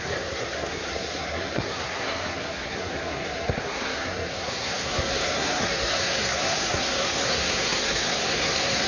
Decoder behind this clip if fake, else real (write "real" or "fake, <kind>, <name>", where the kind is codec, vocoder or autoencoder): fake, codec, SNAC